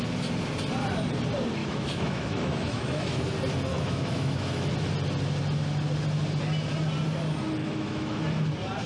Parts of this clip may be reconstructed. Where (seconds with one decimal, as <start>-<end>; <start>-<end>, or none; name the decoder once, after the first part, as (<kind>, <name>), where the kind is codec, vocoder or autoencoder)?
1.6-3.2 (autoencoder, DAC-VAE); 3.7-4.7; 7.6-8.2